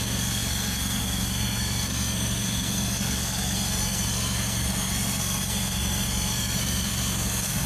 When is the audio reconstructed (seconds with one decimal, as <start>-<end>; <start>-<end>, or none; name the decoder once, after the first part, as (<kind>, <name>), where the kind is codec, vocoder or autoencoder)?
0.0-7.7 (codec, SNAC)